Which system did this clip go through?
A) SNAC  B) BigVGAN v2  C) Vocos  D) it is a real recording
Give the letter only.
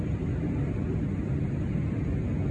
D